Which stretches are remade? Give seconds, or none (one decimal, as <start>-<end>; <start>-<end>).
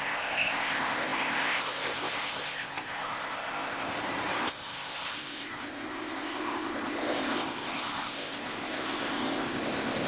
0.0-3.9; 4.4-10.1